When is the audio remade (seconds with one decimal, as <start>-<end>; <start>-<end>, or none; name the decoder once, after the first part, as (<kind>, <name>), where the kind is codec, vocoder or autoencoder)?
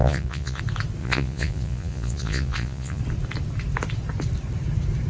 0.0-0.6 (vocoder, Vocos); 1.0-3.0